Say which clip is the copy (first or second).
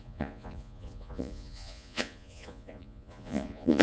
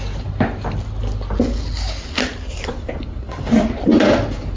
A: first